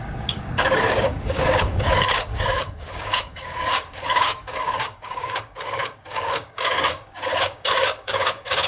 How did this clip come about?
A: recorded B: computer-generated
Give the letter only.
B